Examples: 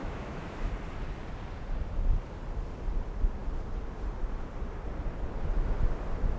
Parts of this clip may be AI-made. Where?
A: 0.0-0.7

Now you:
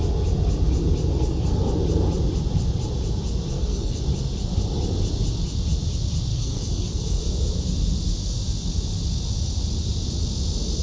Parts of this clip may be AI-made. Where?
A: 1.1-1.7; 3.5-4.0; 6.3-7.2

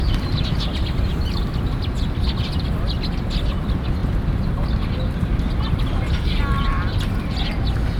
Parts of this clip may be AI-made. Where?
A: 4.0-4.8

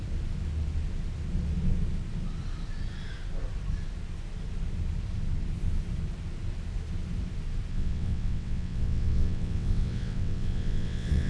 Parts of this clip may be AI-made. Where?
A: 7.7-11.3